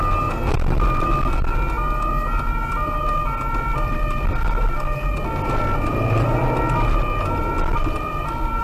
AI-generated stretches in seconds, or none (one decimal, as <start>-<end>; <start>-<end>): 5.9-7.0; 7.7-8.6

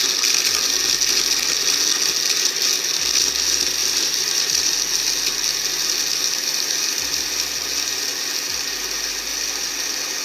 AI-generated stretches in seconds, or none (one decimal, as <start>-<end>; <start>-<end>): 3.8-4.8

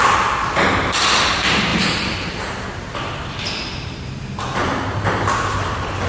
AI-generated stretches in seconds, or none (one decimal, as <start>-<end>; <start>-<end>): 1.7-2.4